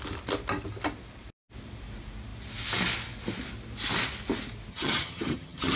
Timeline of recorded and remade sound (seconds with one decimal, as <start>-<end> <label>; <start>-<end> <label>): 0.0-4.7 recorded; 4.7-5.8 remade